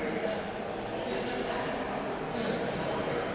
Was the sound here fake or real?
real